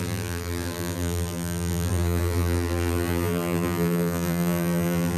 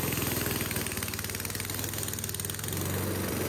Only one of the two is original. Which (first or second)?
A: second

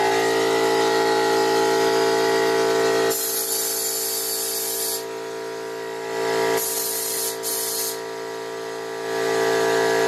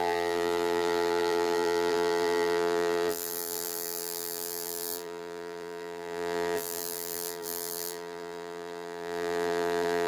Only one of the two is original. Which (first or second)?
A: first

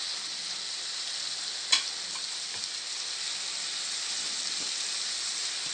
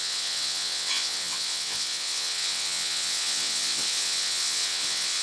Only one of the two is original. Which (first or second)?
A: first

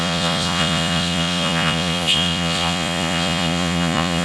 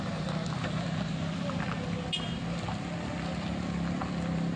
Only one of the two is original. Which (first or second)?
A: second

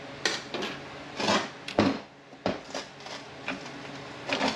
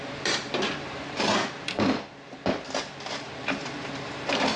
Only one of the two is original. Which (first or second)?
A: first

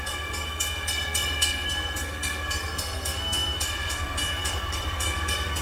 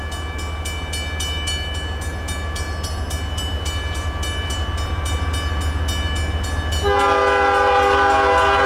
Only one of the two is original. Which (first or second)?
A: second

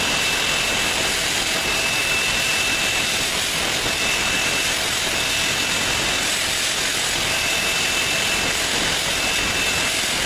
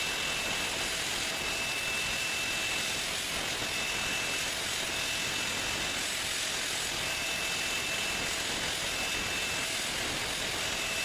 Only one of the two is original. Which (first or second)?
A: second